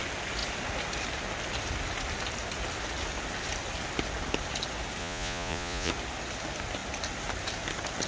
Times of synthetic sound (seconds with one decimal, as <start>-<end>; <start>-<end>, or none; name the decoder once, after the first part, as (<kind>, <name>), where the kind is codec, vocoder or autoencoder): 5.0-5.9 (vocoder, Vocos)